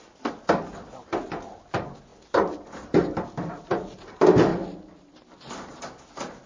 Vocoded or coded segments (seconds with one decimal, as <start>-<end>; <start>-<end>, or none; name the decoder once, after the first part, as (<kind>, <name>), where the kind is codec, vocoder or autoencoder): 0.0-4.5 (vocoder, BigVGAN v2); 5.1-6.5